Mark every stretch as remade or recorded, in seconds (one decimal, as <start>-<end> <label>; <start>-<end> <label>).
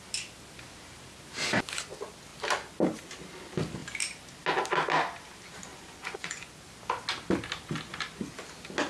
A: 0.0-5.7 recorded; 5.7-6.5 remade; 6.5-8.9 recorded